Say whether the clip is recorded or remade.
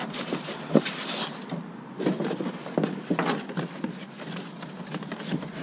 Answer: recorded